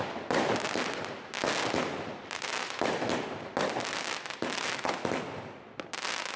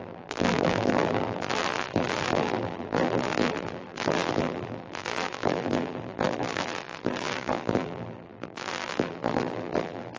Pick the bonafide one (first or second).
first